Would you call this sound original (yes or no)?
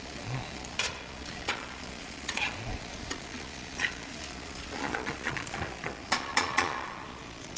no